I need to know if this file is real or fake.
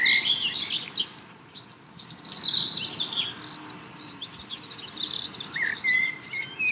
real